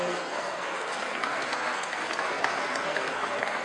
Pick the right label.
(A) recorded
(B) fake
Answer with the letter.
B